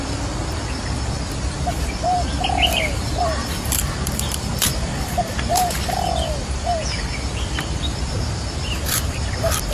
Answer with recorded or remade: remade